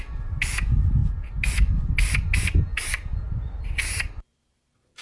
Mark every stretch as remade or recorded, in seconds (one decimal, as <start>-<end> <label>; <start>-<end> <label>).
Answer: 0.0-1.0 recorded; 1.0-1.8 remade; 1.8-2.7 recorded; 2.7-5.0 remade